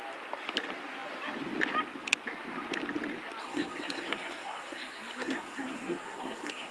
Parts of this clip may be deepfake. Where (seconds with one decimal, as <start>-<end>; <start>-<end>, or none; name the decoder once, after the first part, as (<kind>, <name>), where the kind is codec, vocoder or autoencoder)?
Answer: 3.4-6.7 (codec, SNAC)